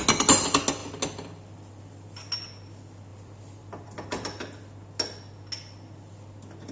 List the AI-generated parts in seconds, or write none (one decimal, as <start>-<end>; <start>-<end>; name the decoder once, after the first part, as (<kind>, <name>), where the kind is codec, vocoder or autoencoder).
3.1-4.6 (vocoder, BigVGAN v2)